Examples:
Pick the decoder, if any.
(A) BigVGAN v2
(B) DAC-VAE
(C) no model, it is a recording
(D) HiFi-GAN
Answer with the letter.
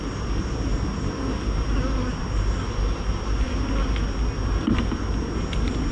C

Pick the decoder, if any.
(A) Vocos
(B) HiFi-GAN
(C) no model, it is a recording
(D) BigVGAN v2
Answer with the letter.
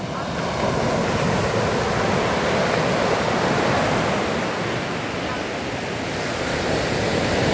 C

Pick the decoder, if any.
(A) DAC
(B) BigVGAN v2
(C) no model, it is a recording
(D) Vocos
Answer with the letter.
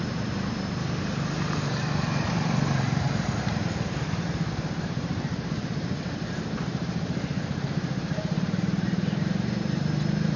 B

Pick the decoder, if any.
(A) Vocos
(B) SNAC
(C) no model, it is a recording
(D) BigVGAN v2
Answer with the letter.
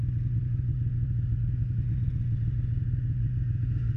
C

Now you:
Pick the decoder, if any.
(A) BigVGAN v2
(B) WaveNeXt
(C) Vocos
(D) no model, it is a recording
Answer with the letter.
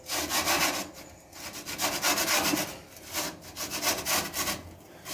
D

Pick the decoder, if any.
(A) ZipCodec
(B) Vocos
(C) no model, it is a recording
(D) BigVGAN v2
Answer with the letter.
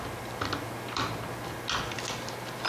C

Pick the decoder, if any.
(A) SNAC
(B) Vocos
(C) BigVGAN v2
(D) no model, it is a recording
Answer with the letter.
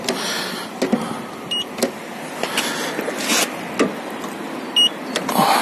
D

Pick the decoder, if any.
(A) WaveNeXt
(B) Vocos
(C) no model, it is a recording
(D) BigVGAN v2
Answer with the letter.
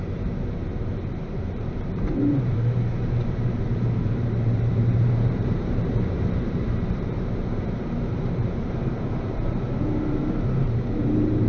D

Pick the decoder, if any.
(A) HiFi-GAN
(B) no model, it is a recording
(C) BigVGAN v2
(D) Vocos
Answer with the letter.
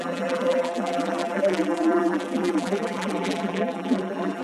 C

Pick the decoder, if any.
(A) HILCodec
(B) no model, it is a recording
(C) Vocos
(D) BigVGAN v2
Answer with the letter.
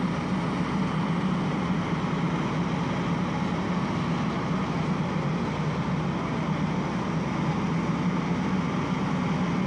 B